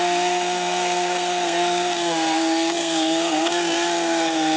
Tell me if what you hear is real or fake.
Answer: fake